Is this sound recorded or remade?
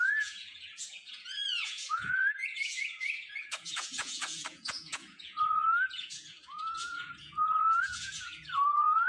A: remade